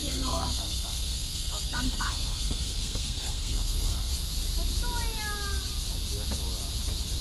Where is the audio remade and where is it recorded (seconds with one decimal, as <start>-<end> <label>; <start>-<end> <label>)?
0.0-4.1 remade; 4.1-7.2 recorded